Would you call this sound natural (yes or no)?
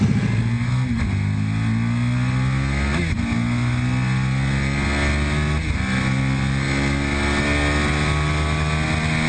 yes